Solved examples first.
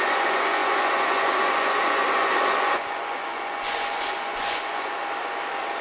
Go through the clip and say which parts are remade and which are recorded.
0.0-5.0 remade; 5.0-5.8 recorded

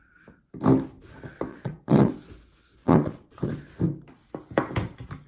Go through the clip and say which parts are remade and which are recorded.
0.0-1.5 recorded; 1.5-2.1 remade; 2.1-2.8 recorded; 2.8-3.5 remade; 3.5-5.3 recorded